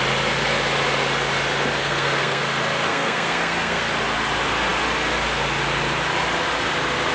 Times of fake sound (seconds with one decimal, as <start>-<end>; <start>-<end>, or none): 1.8-2.4; 2.9-3.9